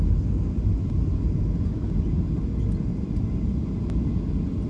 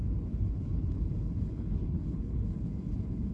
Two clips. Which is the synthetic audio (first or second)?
second